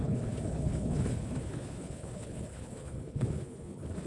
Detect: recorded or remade remade